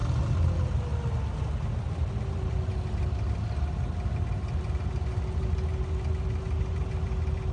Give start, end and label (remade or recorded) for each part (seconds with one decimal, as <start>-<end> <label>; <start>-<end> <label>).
0.0-7.5 recorded